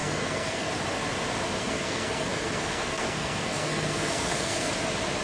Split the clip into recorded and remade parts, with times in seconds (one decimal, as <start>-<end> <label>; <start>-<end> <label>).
0.0-0.7 remade; 0.7-1.6 recorded; 1.6-4.7 remade; 4.7-5.2 recorded

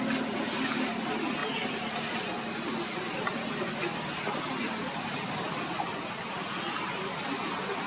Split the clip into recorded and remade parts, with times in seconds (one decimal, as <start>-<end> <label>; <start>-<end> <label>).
0.0-7.9 recorded

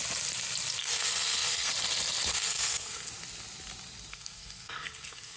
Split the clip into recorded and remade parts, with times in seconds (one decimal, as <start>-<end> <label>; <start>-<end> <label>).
0.0-0.8 recorded; 0.8-1.7 remade; 1.7-2.3 recorded; 2.3-3.1 remade; 3.1-4.1 recorded; 4.1-5.4 remade

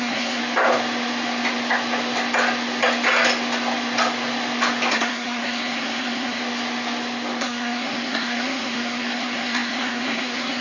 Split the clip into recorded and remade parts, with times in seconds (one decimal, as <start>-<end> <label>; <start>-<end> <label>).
0.0-0.4 remade; 0.4-4.9 recorded; 4.9-6.4 remade; 6.4-7.4 recorded; 7.4-10.6 remade

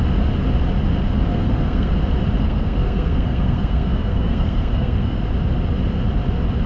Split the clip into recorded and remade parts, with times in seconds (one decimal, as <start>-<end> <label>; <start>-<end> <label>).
0.0-1.3 recorded; 1.3-1.9 remade; 1.9-2.4 recorded; 2.4-5.2 remade; 5.2-6.7 recorded